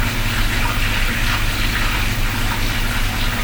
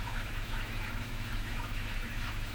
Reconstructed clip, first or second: second